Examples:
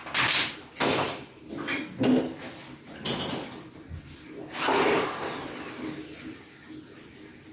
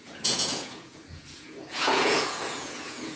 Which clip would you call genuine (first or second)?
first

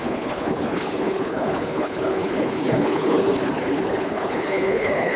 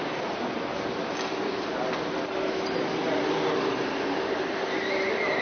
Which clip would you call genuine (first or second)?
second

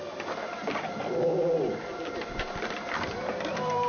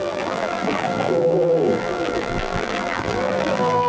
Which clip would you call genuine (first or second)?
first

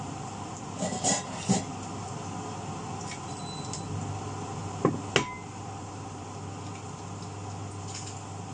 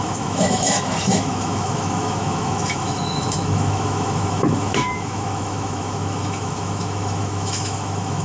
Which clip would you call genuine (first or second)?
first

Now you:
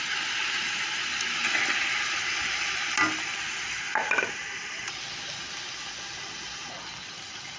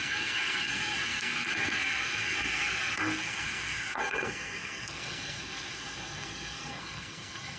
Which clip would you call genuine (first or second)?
first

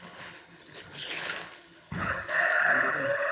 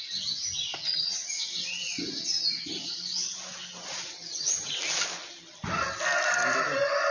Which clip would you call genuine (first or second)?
second